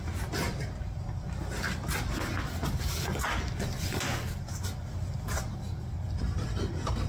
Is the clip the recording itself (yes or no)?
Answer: yes